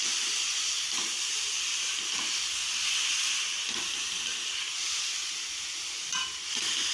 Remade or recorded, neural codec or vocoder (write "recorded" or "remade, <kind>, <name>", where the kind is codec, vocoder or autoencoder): recorded